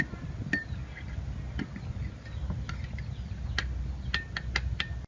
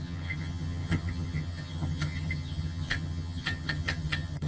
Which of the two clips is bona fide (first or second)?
first